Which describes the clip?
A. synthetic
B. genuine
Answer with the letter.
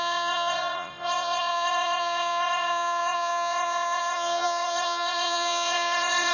A